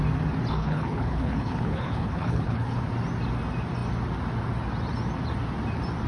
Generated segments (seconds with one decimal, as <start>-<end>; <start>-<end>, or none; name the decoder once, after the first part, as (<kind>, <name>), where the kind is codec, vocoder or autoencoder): 0.5-2.8 (codec, HILCodec)